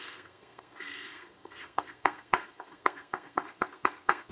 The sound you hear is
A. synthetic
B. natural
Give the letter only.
A